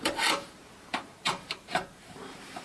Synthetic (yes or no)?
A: yes